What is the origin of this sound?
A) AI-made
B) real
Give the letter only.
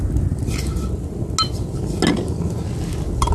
B